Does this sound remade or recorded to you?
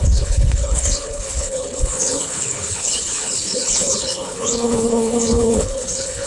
remade